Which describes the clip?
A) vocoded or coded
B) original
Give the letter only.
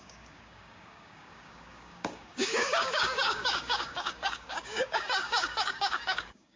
A